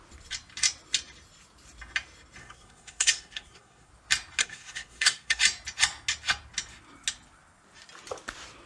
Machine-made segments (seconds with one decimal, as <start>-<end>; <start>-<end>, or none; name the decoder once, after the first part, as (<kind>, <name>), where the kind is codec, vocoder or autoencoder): 2.4-3.9 (codec, SNAC); 4.4-5.4